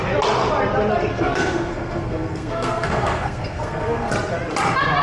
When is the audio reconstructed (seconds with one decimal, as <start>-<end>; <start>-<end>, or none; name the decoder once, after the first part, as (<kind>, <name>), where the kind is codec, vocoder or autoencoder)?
1.1-4.1 (codec, SNAC)